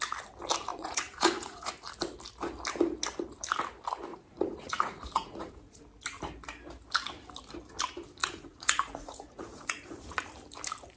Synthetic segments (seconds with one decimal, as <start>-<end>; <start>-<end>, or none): 0.7-1.7; 4.1-5.8; 8.2-10.2